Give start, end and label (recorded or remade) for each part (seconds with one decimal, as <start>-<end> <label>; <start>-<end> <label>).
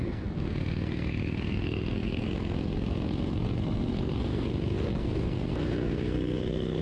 0.0-6.8 remade